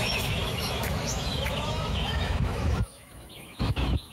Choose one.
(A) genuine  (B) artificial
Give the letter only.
B